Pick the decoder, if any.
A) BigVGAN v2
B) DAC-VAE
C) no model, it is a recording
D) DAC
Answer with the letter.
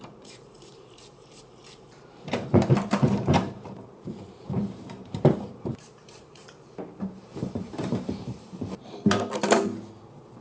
A